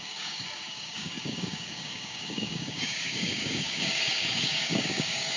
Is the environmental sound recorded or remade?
remade